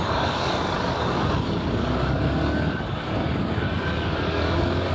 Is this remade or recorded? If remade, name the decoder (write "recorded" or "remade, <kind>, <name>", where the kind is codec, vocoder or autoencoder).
remade, codec, DAC